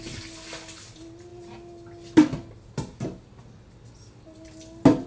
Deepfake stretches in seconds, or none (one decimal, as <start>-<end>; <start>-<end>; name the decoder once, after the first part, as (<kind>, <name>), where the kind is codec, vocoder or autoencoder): none